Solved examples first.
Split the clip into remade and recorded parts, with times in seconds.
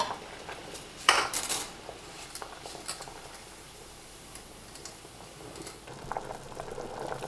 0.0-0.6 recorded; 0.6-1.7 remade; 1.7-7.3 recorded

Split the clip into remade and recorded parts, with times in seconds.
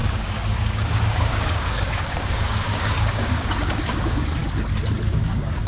0.0-4.4 remade; 4.4-5.1 recorded; 5.1-5.7 remade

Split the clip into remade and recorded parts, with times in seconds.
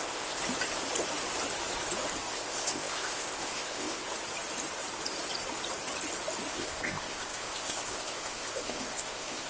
0.0-0.4 remade; 0.4-2.2 recorded; 2.2-4.0 remade; 4.0-6.5 recorded; 6.5-9.5 remade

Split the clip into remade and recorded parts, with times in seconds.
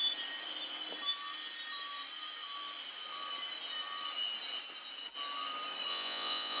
0.0-5.9 recorded; 5.9-6.6 remade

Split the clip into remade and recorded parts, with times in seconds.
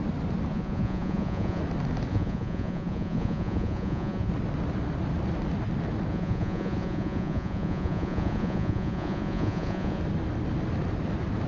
0.0-0.5 recorded; 0.5-1.6 remade; 1.6-2.1 recorded; 2.1-4.3 remade; 4.3-6.1 recorded; 6.1-10.0 remade; 10.0-11.5 recorded